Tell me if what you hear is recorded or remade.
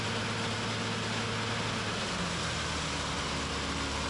recorded